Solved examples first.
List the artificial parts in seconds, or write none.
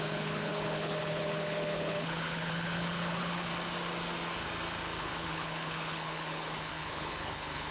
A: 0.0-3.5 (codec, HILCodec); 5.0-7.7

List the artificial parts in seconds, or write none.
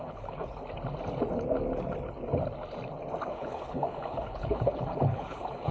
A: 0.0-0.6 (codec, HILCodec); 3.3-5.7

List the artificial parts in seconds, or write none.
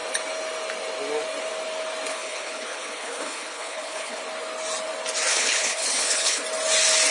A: 2.1-4.2 (codec, HILCodec); 5.3-6.4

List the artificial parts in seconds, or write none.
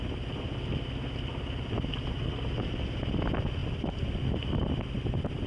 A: none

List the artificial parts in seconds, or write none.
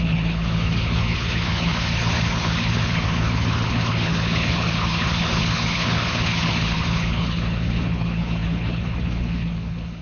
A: 0.0-10.0 (codec, HILCodec)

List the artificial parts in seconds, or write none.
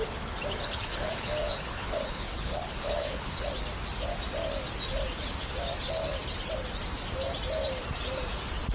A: 0.6-3.5 (codec, HILCodec)